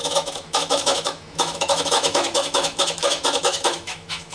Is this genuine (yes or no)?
no